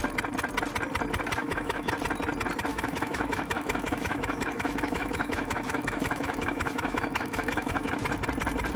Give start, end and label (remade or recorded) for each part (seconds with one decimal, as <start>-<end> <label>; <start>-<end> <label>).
0.0-1.4 recorded; 1.4-1.9 remade; 1.9-2.7 recorded; 2.7-7.9 remade; 7.9-8.8 recorded